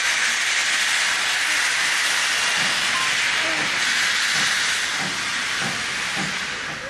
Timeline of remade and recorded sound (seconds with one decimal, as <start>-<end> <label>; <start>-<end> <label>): 0.0-6.9 recorded